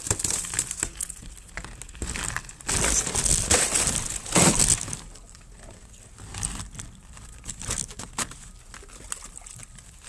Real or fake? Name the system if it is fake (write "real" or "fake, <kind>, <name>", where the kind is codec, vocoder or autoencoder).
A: real